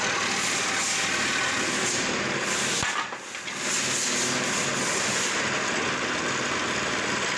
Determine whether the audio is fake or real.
real